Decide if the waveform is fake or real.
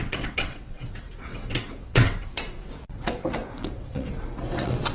fake